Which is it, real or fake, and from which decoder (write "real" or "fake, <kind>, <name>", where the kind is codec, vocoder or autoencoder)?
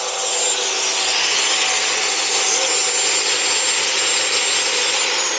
real